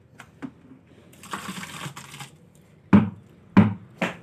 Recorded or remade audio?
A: recorded